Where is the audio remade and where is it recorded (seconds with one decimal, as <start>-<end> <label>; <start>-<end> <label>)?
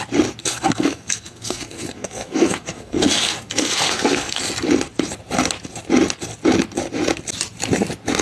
0.0-0.4 recorded; 0.4-4.4 remade; 4.4-8.2 recorded